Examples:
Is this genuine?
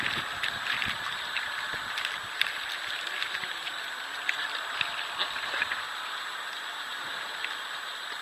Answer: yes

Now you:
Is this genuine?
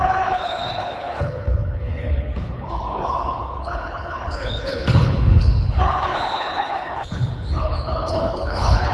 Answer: no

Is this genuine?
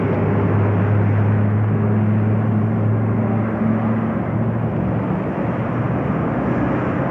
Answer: yes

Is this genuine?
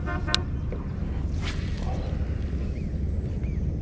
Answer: yes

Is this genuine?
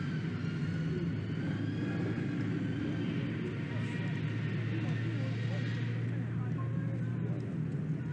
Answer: yes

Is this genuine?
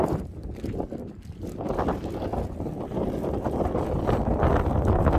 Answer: yes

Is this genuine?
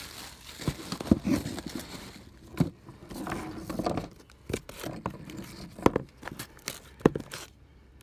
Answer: yes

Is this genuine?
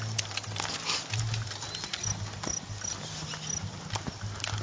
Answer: yes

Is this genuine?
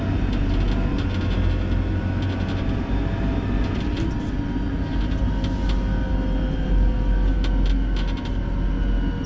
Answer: yes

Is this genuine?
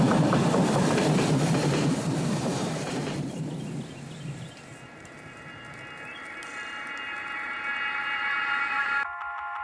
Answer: no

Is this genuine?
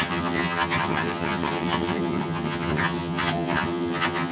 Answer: no